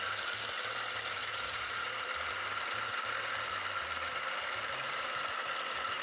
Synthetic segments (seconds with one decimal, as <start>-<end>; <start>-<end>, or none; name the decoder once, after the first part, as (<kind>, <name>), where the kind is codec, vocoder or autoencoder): 1.2-1.9 (vocoder, Vocos)